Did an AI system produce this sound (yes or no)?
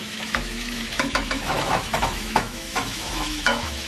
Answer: yes